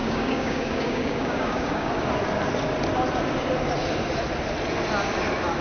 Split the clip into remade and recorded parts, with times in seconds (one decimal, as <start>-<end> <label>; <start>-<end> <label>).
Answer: 0.0-1.9 remade; 1.9-5.6 recorded